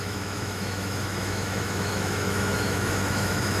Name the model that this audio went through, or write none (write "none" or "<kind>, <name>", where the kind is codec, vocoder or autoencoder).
autoencoder, DAC-VAE